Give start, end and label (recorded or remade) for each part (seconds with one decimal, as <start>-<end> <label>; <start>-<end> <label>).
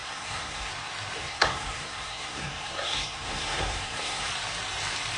0.0-0.7 remade; 0.7-1.2 recorded; 1.2-4.3 remade; 4.3-5.2 recorded